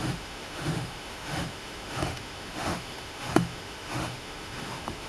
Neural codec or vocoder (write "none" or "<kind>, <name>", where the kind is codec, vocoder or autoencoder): autoencoder, DAC-VAE